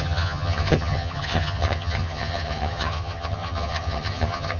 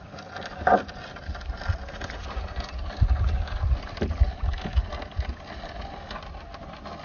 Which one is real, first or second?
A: second